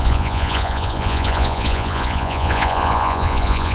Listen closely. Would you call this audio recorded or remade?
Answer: remade